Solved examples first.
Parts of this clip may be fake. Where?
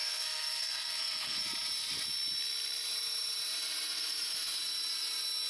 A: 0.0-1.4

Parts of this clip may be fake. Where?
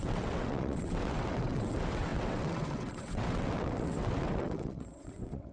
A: 0.0-5.5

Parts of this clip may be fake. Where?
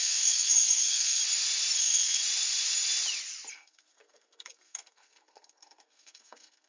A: 0.0-1.2; 1.8-2.2; 3.5-6.7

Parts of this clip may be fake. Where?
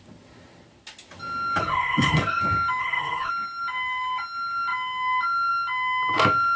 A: 1.6-2.4; 2.8-3.3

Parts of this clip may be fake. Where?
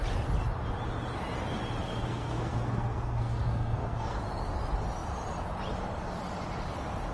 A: 1.8-4.2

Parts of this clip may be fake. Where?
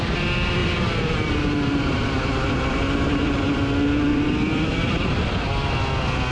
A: 0.6-3.4; 4.1-5.5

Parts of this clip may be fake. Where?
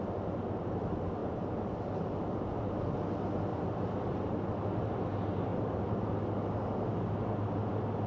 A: 1.2-2.6; 3.5-4.1; 5.5-6.0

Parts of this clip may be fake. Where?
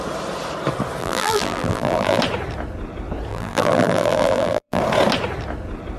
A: 1.0-2.2; 3.3-4.8